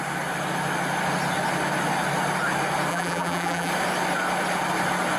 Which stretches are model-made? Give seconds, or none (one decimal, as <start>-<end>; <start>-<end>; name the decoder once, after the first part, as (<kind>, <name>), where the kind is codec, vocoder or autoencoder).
2.9-3.7 (vocoder, BigVGAN v2)